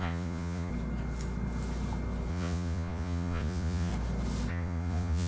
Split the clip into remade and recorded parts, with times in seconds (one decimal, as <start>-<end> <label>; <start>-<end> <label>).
0.0-0.7 remade; 0.7-2.3 recorded; 2.3-3.9 remade; 3.9-4.5 recorded; 4.5-5.3 remade